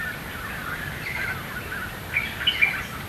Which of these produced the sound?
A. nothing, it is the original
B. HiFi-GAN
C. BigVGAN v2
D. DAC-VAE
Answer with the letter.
A